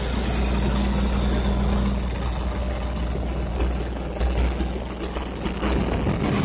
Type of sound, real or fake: real